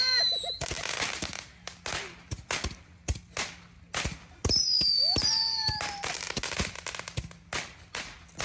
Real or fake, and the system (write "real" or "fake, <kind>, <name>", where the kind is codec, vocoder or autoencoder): real